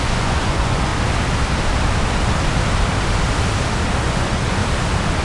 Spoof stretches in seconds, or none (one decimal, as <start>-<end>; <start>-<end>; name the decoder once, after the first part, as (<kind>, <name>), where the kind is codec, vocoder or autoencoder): 0.0-0.9 (vocoder, Vocos); 4.0-4.6